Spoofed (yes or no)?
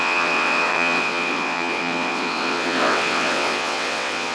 yes